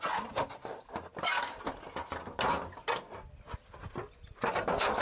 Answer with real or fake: real